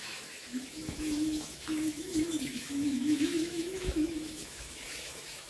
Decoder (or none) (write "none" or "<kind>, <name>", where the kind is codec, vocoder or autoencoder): autoencoder, DAC-VAE